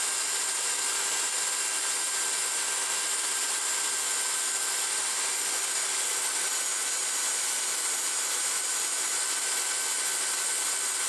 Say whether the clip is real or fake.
real